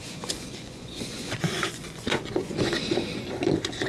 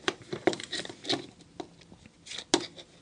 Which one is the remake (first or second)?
first